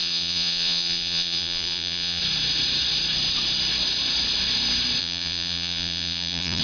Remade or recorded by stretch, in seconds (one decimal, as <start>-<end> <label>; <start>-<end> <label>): 0.0-2.2 remade; 2.2-5.0 recorded; 5.0-6.6 remade